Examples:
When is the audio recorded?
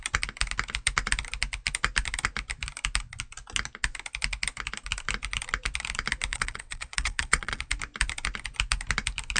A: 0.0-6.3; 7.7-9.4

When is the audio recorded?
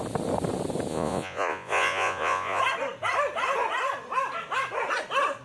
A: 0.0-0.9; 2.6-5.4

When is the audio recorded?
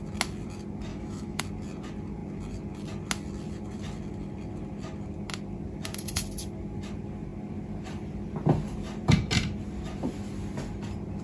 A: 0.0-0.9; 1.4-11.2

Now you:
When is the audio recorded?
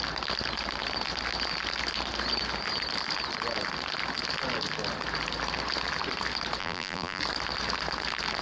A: 0.0-6.6; 7.2-8.4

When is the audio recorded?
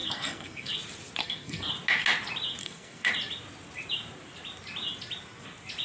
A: 0.7-1.2; 1.7-2.6; 3.1-5.8